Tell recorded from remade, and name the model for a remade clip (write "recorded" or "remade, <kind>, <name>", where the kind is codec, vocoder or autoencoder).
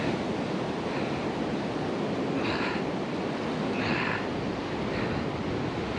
recorded